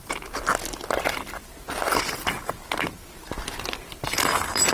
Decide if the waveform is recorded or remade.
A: recorded